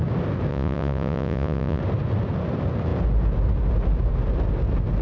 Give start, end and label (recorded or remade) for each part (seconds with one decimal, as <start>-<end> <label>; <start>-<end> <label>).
0.0-0.5 recorded; 0.5-1.8 remade; 1.8-5.0 recorded